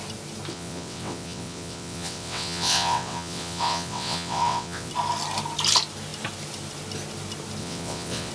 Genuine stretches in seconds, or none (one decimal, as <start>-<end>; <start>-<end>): 0.0-0.5; 4.9-7.6